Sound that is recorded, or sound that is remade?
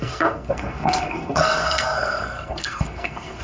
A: remade